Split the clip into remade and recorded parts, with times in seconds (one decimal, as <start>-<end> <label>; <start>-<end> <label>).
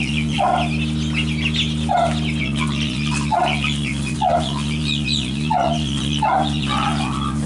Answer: 0.0-0.5 remade; 0.5-2.4 recorded; 2.4-7.5 remade